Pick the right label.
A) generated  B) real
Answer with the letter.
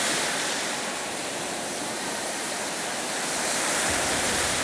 A